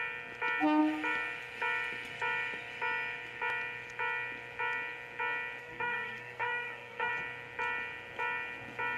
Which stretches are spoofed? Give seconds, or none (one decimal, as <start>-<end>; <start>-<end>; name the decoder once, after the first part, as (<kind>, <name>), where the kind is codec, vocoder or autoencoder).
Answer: 5.6-7.1 (codec, SNAC)